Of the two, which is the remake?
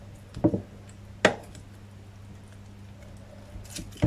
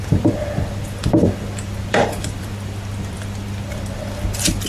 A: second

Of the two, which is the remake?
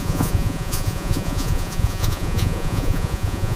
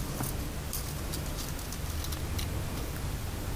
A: first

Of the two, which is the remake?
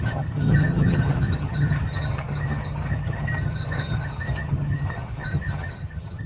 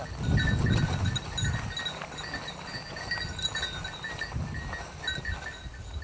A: first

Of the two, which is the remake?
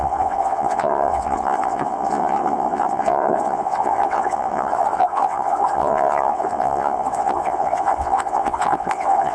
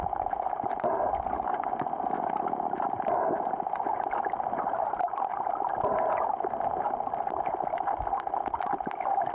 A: first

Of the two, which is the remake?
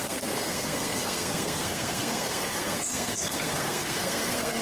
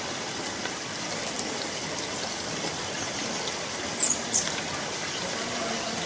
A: first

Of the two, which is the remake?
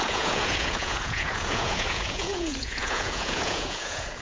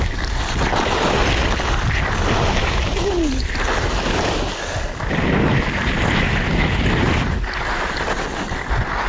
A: first